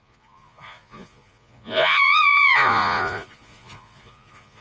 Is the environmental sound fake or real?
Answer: fake